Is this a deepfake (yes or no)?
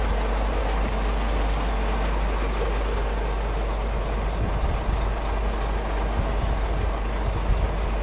no